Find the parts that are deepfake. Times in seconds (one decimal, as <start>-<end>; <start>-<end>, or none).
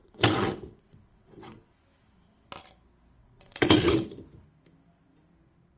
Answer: 0.0-1.7; 3.2-3.9